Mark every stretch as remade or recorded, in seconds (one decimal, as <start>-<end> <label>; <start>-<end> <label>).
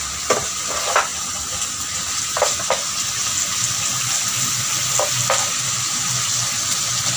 0.0-7.2 recorded